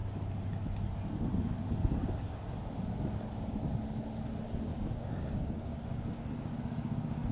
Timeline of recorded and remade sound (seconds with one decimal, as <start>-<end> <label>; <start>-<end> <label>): 0.0-4.7 recorded; 4.7-7.3 remade